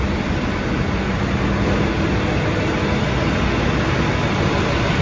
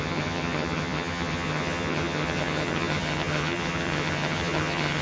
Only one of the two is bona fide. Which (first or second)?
first